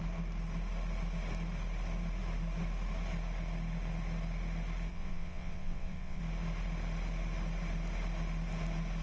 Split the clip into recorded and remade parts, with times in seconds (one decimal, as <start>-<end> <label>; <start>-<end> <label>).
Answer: 0.0-4.9 recorded; 4.9-6.2 remade; 6.2-9.0 recorded